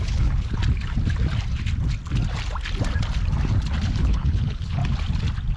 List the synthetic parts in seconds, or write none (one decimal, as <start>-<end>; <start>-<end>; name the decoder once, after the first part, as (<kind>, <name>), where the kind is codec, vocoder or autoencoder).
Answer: 0.0-0.6 (codec, HILCodec); 4.0-4.8